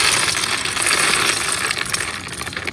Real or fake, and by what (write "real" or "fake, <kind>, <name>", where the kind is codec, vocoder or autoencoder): real